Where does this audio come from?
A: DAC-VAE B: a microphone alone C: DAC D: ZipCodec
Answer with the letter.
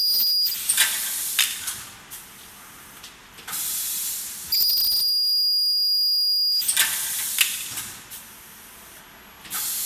B